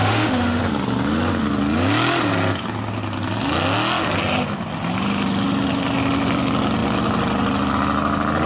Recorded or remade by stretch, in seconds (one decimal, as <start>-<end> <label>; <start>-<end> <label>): 0.0-0.6 remade; 0.6-8.5 recorded